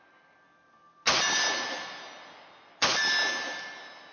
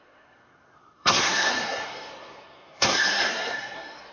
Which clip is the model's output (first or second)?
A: second